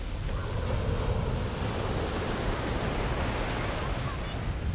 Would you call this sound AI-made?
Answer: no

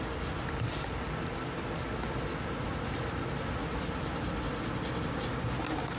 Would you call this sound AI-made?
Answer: no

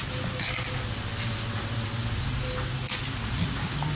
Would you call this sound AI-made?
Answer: no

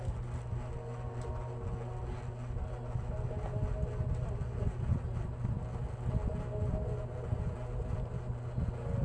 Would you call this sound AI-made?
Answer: no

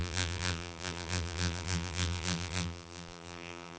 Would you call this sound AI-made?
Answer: yes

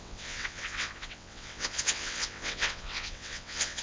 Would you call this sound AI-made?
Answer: yes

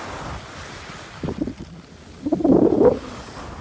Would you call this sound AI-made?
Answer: no